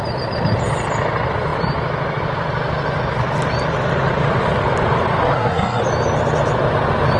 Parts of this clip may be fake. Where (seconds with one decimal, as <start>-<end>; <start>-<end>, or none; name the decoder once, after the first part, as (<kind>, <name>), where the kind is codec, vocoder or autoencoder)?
5.2-5.8 (codec, SNAC)